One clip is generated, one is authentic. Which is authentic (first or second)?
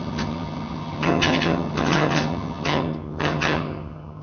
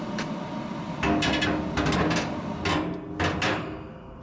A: second